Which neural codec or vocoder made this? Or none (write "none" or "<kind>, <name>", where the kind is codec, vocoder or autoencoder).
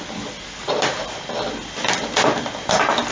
vocoder, BigVGAN v2